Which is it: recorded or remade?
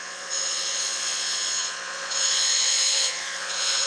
remade